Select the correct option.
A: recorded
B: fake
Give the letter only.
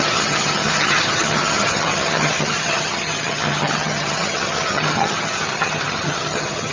B